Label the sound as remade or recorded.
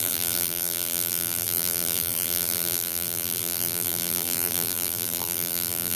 remade